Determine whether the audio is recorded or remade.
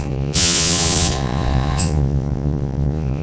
remade